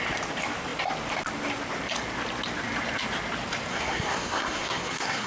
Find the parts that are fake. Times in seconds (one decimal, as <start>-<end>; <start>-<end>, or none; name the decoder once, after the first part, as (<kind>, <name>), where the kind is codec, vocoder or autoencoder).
3.7-5.3 (codec, SNAC)